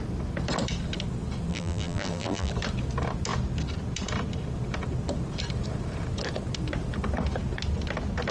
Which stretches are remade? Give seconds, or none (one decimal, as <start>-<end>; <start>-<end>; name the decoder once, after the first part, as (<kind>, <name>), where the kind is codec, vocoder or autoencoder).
1.5-2.5 (vocoder, BigVGAN v2)